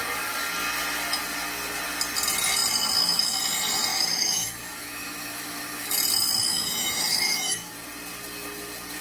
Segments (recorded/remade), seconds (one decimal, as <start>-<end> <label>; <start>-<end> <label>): 0.0-3.9 recorded; 3.9-5.9 remade; 5.9-6.5 recorded; 6.5-7.7 remade; 7.7-9.0 recorded